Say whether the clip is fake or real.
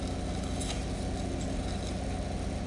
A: real